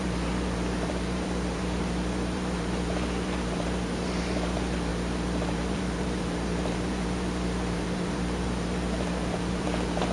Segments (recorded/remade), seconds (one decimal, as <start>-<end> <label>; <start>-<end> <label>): 0.0-10.1 remade